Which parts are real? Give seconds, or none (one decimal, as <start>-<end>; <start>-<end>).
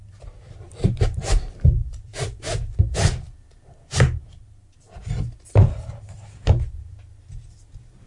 2.1-5.4